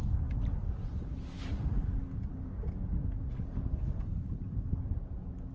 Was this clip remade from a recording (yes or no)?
no